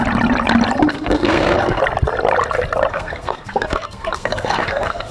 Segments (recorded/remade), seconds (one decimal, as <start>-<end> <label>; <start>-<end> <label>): 0.0-0.9 recorded; 0.9-1.8 remade; 1.8-2.9 recorded; 2.9-5.1 remade